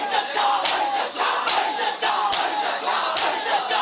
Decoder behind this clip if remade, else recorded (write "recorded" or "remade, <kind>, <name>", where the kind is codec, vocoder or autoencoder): recorded